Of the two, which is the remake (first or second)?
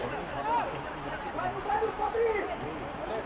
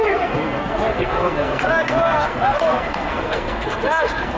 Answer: second